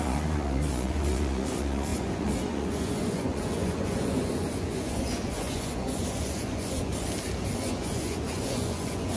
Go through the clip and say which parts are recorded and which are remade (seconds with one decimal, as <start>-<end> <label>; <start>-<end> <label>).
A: 0.0-6.9 remade; 6.9-7.6 recorded; 7.6-9.2 remade

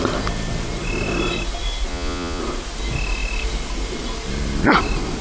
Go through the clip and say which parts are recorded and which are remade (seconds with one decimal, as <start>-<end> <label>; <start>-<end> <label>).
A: 0.0-1.9 recorded; 1.9-2.4 remade; 2.4-5.2 recorded